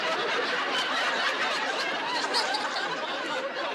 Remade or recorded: recorded